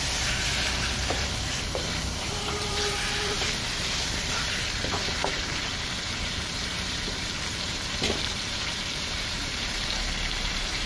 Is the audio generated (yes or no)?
yes